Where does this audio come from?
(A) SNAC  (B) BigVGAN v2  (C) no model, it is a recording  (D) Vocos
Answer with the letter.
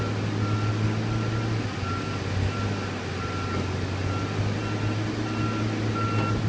C